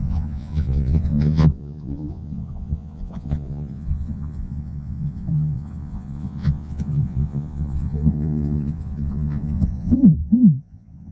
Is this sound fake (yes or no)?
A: yes